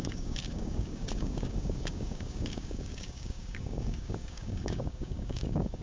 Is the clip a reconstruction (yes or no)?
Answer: yes